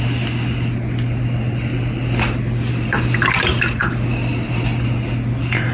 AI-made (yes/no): no